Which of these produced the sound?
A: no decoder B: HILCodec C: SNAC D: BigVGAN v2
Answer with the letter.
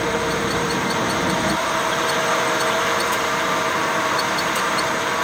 D